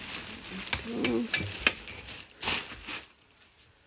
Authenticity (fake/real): real